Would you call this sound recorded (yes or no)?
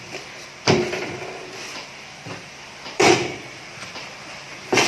no